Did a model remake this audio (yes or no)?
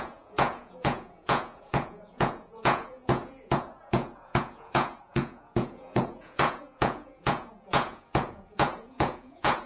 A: yes